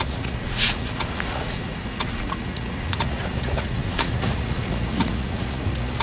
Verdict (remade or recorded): remade